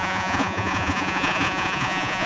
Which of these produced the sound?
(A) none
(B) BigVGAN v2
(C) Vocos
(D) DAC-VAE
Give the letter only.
C